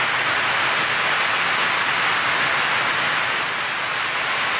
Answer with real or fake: real